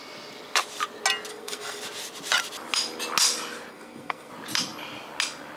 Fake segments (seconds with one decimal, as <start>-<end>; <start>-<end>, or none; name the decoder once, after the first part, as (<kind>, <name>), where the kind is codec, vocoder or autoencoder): 1.3-1.8 (codec, SNAC); 3.7-4.3